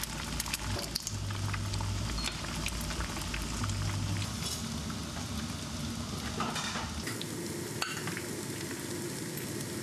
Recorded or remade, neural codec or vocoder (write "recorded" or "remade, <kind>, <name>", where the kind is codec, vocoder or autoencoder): recorded